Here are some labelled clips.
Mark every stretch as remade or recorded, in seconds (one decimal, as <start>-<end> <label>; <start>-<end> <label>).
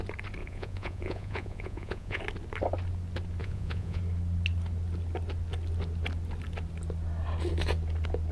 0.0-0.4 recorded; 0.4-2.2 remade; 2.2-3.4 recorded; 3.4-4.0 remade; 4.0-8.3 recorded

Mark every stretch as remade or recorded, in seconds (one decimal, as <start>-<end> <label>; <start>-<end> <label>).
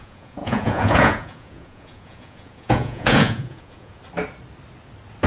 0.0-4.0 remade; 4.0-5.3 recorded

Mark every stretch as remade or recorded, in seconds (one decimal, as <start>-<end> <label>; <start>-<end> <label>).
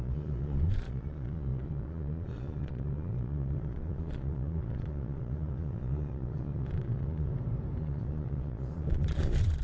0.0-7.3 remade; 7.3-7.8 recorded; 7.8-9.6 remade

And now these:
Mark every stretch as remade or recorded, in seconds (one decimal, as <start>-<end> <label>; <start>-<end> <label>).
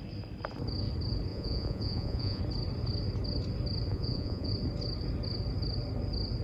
0.0-1.3 recorded; 1.3-2.4 remade; 2.4-3.9 recorded; 3.9-4.5 remade; 4.5-6.4 recorded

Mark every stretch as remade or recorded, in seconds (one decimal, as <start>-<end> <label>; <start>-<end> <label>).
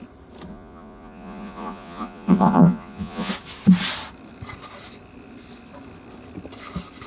0.0-0.5 recorded; 0.5-3.3 remade; 3.3-7.1 recorded